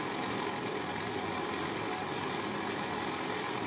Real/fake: real